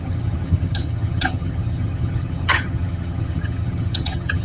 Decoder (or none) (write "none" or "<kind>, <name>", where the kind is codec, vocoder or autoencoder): vocoder, HiFi-GAN